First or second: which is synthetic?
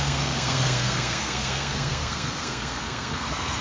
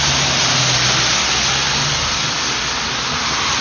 first